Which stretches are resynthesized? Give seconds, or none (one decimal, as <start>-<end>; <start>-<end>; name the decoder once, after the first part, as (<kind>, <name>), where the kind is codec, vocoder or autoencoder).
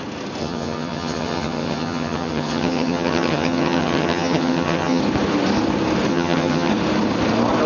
0.4-5.0 (vocoder, HiFi-GAN); 6.1-6.7